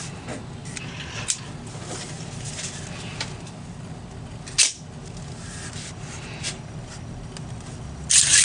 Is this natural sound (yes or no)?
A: yes